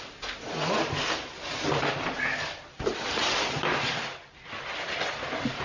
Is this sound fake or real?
real